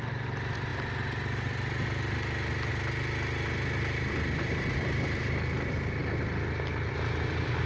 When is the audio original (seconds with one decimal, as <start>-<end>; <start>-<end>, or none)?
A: 0.0-7.7